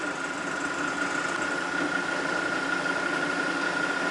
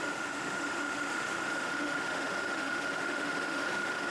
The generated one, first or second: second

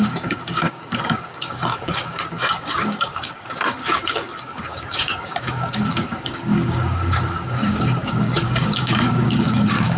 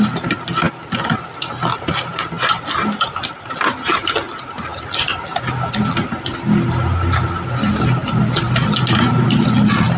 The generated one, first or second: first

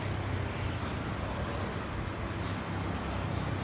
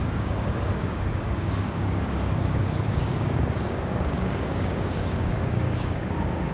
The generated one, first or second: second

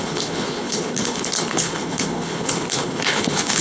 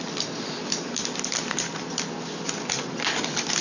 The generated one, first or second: first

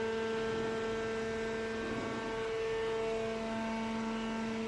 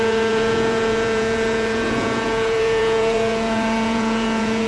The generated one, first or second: second